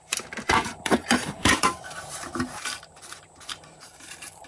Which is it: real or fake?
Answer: fake